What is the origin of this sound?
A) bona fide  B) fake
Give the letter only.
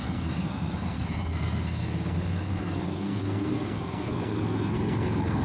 B